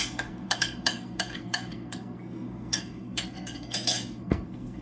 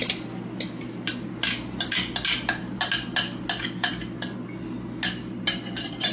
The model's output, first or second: first